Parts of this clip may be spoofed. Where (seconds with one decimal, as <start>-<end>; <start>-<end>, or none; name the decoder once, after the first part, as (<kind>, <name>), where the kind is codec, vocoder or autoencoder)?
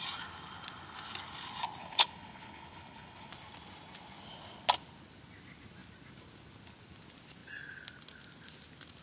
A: 1.8-3.3 (codec, HILCodec)